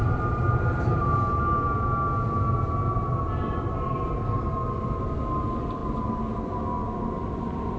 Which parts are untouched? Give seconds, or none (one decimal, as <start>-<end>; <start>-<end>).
0.0-7.8